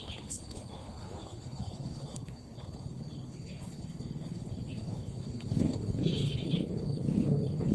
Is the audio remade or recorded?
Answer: remade